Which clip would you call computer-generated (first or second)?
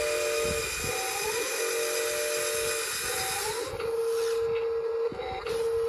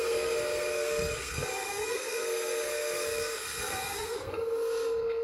second